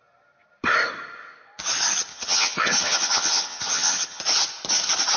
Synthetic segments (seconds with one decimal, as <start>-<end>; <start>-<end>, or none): 2.1-4.2